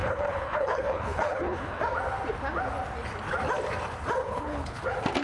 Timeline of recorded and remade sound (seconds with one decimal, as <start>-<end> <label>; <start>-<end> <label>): 0.0-1.8 remade; 1.8-4.2 recorded; 4.2-4.8 remade; 4.8-5.2 recorded